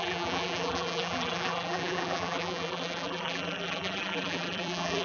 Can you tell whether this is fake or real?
fake